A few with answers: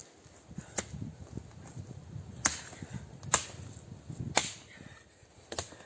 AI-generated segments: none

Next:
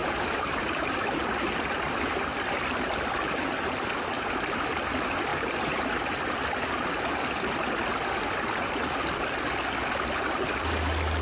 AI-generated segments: 0.0-0.9; 5.3-5.8